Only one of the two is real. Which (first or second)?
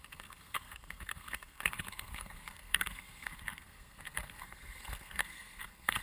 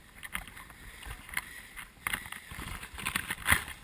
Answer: second